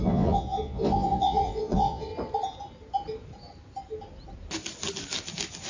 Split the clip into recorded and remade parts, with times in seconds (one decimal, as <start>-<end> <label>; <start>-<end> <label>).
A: 0.0-2.1 remade; 2.1-5.7 recorded